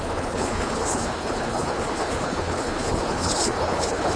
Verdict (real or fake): fake